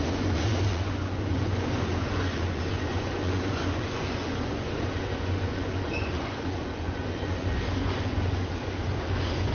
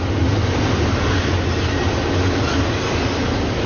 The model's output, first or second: first